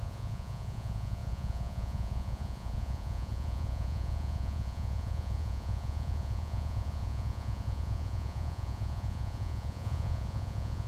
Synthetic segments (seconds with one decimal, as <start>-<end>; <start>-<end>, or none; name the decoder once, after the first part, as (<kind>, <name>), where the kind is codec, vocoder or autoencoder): 0.0-10.9 (vocoder, Vocos)